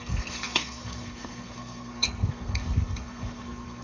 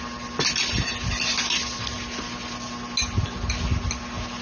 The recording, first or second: second